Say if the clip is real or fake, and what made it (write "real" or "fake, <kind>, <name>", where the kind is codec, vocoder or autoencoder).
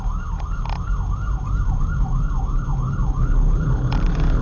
real